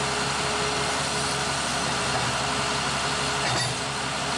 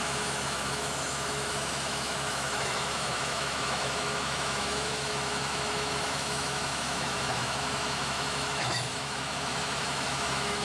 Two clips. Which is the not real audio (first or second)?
second